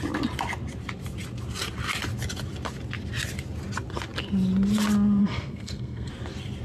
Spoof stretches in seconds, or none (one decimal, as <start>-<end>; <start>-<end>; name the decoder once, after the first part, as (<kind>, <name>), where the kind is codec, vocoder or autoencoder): 5.2-6.1 (codec, SNAC)